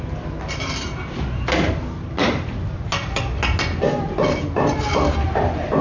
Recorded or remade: recorded